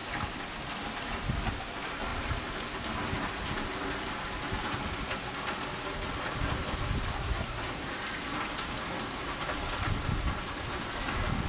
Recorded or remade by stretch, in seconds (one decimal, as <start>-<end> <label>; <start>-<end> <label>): 0.0-7.2 recorded; 7.2-7.9 remade; 7.9-11.5 recorded